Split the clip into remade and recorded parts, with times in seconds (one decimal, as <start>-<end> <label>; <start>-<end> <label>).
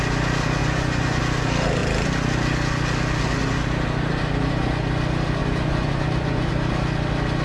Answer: 0.0-0.6 recorded; 0.6-1.2 remade; 1.2-5.4 recorded; 5.4-6.5 remade; 6.5-7.4 recorded